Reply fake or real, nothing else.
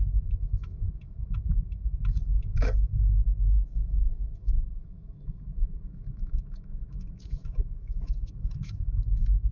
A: fake